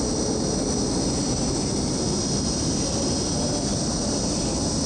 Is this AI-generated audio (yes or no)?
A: no